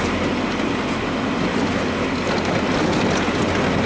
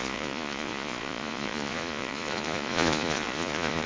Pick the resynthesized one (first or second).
second